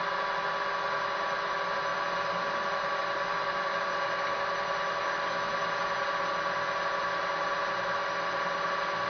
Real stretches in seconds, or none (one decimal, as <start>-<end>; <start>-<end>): 0.0-9.1